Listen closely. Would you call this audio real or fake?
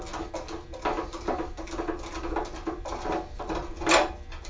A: real